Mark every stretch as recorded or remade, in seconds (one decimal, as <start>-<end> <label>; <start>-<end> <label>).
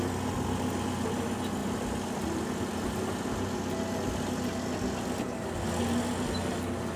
0.0-7.0 recorded